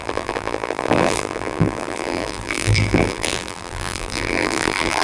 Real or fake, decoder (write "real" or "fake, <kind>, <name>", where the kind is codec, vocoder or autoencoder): fake, vocoder, BigVGAN v2